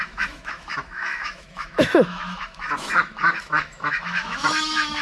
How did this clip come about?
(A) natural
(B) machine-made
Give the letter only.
B